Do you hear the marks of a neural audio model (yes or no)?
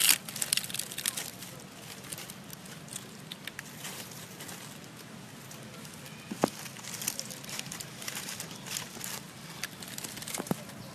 no